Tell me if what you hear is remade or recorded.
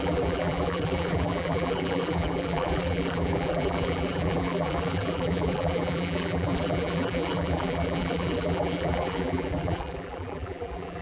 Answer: remade